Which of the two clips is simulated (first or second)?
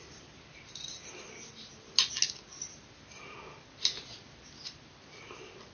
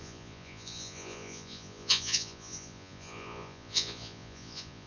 second